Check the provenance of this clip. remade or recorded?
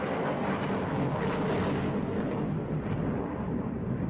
recorded